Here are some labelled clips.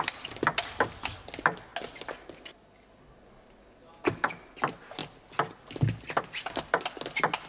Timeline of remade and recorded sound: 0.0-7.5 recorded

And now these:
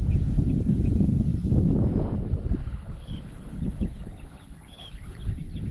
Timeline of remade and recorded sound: 0.0-2.6 recorded; 2.6-5.3 remade; 5.3-5.7 recorded

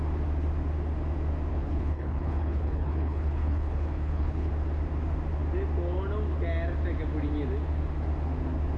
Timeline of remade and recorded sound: 0.0-1.5 recorded; 1.5-4.5 remade; 4.5-8.8 recorded

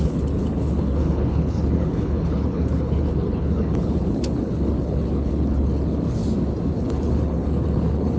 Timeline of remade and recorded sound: 0.0-6.2 remade; 6.2-6.7 recorded; 6.7-8.2 remade